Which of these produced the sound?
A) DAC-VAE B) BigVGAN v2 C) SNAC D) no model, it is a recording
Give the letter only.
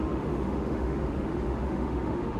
A